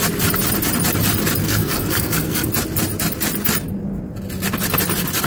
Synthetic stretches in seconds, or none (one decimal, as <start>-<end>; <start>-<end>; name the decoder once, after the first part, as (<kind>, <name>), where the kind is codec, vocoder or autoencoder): 1.4-2.5 (codec, SNAC)